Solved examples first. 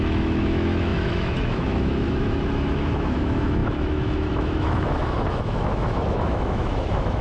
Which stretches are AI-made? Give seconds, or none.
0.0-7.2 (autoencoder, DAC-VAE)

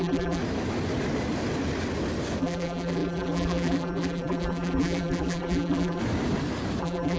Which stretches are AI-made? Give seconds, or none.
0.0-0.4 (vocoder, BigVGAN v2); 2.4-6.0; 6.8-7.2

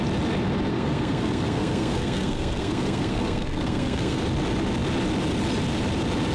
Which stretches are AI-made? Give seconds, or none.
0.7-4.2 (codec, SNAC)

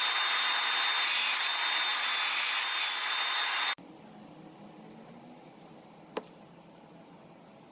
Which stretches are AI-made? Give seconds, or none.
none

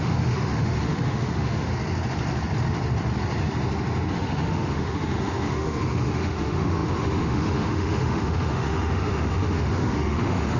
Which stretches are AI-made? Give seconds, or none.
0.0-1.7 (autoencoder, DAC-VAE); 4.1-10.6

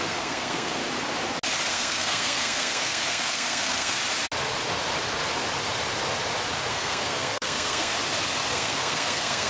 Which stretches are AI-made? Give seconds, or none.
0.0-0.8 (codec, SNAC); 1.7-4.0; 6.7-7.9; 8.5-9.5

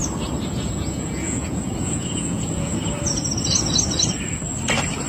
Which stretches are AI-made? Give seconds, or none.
0.5-2.7 (vocoder, Vocos)

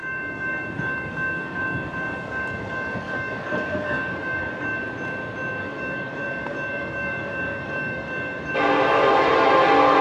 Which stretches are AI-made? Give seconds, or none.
0.0-4.8 (codec, DAC); 5.6-8.5